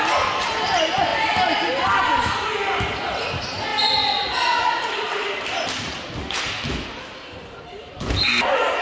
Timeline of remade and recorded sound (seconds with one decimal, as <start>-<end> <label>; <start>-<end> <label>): 0.0-8.8 recorded